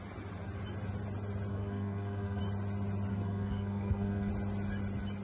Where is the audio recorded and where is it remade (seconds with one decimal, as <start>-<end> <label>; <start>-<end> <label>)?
0.0-1.5 recorded; 1.5-2.4 remade; 2.4-3.1 recorded; 3.1-4.3 remade; 4.3-5.2 recorded